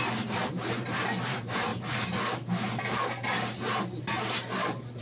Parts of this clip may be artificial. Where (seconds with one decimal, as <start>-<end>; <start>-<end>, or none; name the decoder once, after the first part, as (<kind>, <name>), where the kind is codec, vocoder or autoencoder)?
0.0-1.7 (vocoder, BigVGAN v2)